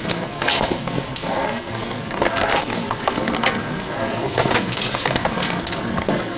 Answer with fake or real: fake